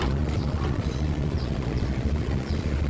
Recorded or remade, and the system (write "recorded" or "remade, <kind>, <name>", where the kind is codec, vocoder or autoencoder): remade, vocoder, Vocos